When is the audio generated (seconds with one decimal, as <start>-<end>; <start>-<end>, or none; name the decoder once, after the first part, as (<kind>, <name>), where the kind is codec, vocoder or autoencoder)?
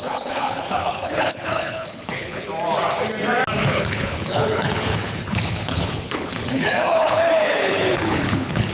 0.0-2.5 (codec, HILCodec); 3.6-8.7